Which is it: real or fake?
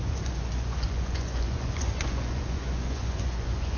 fake